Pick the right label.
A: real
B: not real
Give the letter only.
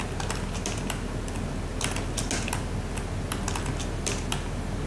A